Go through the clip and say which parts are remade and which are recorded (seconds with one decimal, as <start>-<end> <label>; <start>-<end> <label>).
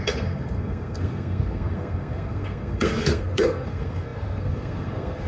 0.0-5.3 remade